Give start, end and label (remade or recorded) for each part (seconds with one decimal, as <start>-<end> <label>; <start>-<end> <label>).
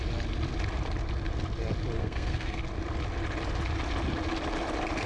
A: 0.0-2.0 recorded; 2.0-2.6 remade; 2.6-5.1 recorded